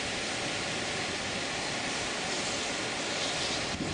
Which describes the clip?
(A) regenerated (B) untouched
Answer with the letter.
B